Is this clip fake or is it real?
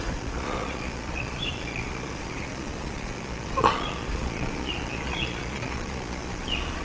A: fake